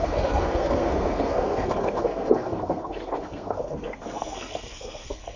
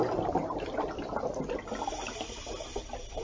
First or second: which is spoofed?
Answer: first